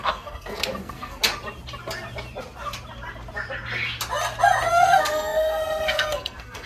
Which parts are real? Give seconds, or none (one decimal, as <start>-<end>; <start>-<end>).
1.2-4.7